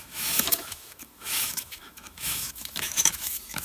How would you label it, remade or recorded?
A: remade